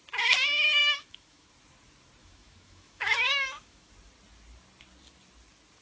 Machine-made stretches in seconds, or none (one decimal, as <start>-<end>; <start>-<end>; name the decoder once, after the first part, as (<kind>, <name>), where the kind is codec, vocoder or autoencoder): 0.8-1.5 (autoencoder, DAC-VAE); 2.2-3.9